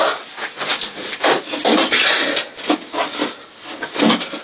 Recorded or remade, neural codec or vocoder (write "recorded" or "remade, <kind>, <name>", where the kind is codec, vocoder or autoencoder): recorded